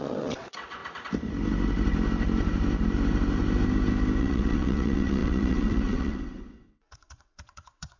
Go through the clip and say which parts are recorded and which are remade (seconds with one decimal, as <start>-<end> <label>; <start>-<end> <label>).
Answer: 0.0-0.8 remade; 0.8-4.2 recorded; 4.2-8.0 remade